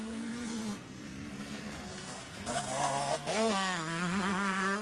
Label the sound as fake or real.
fake